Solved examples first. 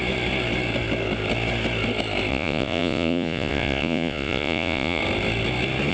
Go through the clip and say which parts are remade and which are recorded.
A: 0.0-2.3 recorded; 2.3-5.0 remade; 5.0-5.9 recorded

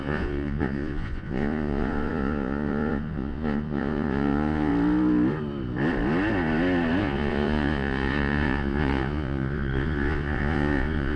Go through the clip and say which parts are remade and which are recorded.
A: 0.0-4.7 remade; 4.7-7.0 recorded; 7.0-11.2 remade

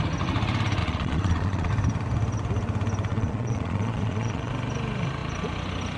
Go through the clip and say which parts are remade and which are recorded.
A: 0.0-0.8 recorded; 0.8-1.7 remade; 1.7-3.1 recorded; 3.1-4.5 remade; 4.5-6.0 recorded